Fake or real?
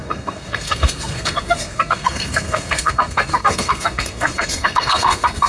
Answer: fake